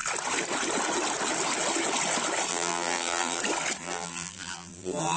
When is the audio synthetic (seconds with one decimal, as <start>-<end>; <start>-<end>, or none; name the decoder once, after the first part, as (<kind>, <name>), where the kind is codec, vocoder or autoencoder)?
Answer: 2.5-3.4 (vocoder, BigVGAN v2); 3.8-5.2